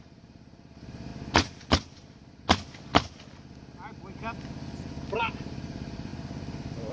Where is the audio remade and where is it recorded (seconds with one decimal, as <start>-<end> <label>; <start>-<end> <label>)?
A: 0.0-1.1 remade; 1.1-5.2 recorded; 5.2-6.1 remade; 6.1-6.9 recorded